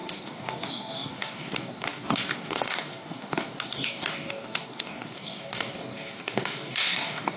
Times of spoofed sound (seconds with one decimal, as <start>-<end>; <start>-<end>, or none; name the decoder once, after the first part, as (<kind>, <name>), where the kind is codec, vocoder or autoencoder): 0.0-7.4 (codec, DAC)